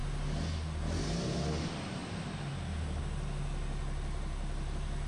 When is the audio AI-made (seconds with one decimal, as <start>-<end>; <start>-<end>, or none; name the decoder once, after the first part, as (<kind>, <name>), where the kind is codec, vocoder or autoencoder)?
none

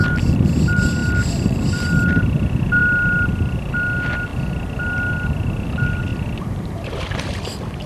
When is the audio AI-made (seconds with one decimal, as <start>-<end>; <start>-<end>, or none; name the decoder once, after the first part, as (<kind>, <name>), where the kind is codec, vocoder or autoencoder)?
1.0-2.2 (vocoder, BigVGAN v2); 2.8-3.7; 6.1-7.9

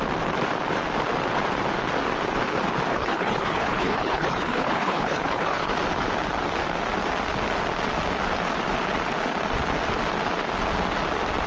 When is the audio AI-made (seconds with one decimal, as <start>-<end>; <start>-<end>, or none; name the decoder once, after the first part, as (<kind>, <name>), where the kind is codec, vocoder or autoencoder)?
2.9-5.7 (codec, HILCodec)

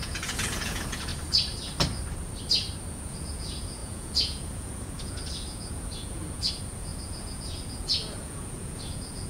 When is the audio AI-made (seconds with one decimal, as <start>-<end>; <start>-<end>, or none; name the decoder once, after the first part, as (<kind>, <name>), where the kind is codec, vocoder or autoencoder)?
0.0-1.1 (vocoder, Vocos); 2.9-9.3

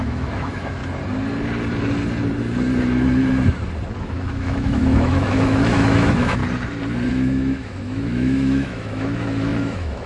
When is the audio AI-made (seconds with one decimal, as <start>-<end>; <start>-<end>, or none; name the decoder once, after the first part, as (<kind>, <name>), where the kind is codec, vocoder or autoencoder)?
0.0-0.8 (autoencoder, DAC-VAE); 4.0-6.4; 7.1-10.1

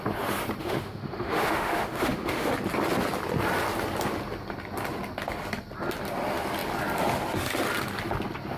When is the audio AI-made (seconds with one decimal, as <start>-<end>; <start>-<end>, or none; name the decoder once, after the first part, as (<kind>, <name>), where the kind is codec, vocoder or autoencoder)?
0.6-2.5 (autoencoder, DAC-VAE)